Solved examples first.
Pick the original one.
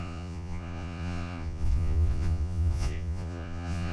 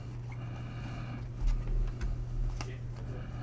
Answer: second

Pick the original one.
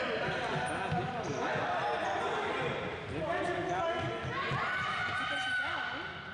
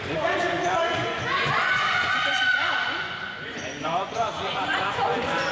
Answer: first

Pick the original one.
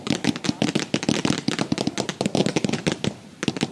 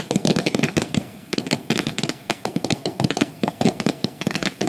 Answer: first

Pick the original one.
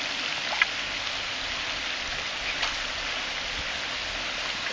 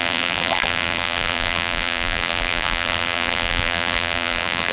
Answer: first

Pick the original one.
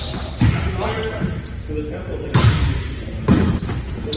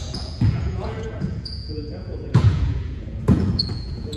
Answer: first